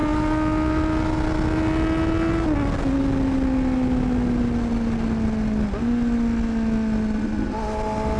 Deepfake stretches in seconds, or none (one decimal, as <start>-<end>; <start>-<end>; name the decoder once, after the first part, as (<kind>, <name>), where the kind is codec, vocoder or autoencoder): none